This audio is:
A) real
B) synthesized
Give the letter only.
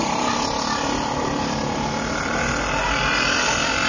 B